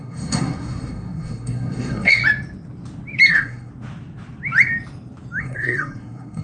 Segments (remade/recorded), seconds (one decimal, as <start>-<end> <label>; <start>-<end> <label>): 0.0-2.2 remade; 2.2-3.3 recorded; 3.3-3.7 remade; 3.7-5.4 recorded; 5.4-6.4 remade